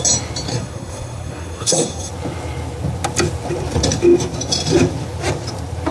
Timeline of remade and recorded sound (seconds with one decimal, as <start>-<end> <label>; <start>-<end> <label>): 0.0-0.5 recorded; 0.5-2.1 remade; 2.1-5.9 recorded